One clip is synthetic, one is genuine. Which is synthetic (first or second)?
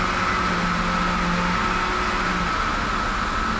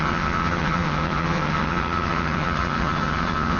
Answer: second